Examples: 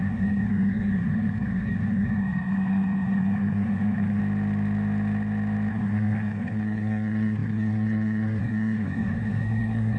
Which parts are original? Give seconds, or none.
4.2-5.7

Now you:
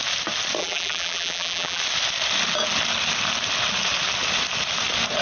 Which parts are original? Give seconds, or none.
0.0-0.6; 1.8-5.2

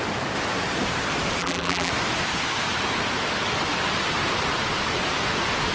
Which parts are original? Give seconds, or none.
0.0-1.4; 1.9-5.7

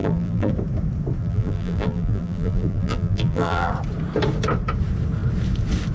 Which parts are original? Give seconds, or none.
0.5-1.2; 3.7-5.9

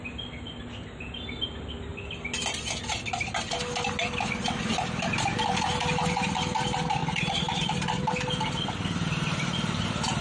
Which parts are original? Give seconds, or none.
0.0-10.2

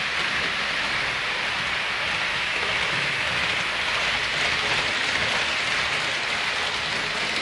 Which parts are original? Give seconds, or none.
0.0-2.3; 3.3-7.4

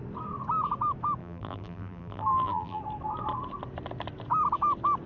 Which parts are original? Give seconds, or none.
0.0-1.2; 2.8-5.1